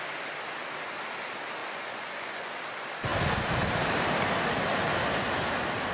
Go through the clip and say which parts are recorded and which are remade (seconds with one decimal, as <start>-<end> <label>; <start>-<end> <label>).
0.0-1.6 recorded; 1.6-2.5 remade; 2.5-5.9 recorded